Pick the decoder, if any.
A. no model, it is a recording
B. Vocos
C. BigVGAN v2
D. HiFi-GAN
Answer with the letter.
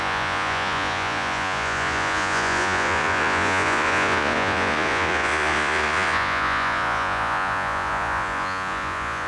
B